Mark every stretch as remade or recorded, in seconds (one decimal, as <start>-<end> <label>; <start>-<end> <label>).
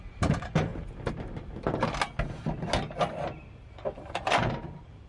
0.0-0.7 remade; 0.7-3.6 recorded; 3.6-5.1 remade